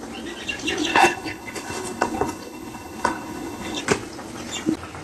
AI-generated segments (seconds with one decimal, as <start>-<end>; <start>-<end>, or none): 0.9-3.8